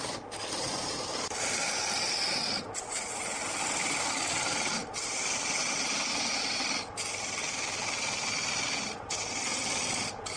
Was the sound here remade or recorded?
recorded